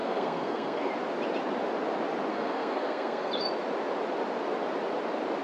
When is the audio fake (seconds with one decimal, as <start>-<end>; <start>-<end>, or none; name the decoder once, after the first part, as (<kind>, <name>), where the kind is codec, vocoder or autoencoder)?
0.0-0.9 (codec, SNAC); 2.3-3.3

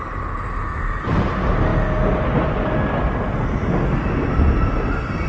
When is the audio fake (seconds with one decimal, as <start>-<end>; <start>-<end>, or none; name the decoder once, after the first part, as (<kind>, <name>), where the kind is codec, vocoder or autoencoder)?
none